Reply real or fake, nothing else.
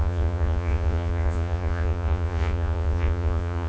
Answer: fake